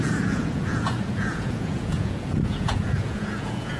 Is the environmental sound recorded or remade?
remade